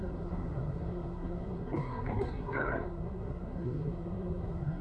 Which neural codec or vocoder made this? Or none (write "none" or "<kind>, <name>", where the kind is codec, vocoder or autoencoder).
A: codec, SNAC